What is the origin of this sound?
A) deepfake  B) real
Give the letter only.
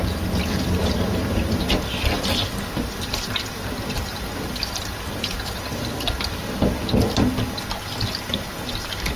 B